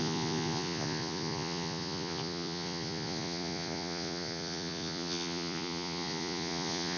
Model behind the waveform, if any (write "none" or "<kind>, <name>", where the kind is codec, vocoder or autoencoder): vocoder, Vocos